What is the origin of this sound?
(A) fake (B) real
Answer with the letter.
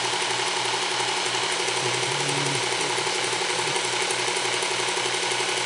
B